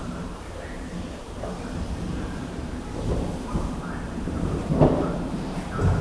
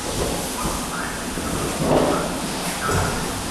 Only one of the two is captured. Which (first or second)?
second